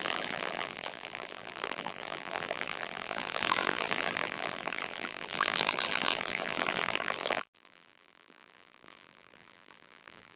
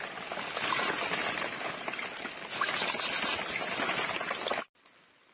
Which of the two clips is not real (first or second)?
first